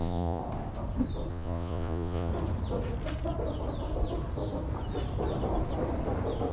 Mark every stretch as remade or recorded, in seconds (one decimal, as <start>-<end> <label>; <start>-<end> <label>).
0.0-0.4 remade; 0.4-1.3 recorded; 1.3-2.3 remade; 2.3-6.5 recorded